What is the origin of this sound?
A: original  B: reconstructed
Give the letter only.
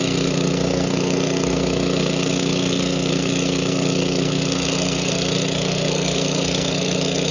B